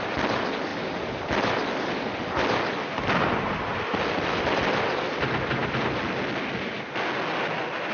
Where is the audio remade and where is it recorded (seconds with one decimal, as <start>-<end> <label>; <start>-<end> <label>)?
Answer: 0.0-7.9 recorded